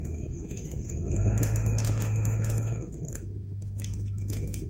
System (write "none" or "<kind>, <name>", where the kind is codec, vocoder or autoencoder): autoencoder, DAC-VAE